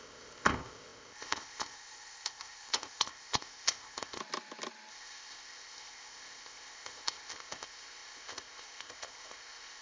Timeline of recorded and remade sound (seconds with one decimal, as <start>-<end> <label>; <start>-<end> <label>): 0.0-4.2 remade; 4.2-4.9 recorded; 4.9-9.8 remade